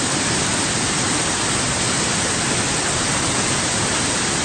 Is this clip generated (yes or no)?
no